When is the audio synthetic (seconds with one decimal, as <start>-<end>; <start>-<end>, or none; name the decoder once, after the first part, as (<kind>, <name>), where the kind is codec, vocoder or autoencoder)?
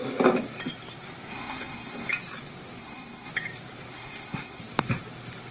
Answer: 1.3-2.1 (codec, SNAC); 2.8-3.3; 3.9-4.6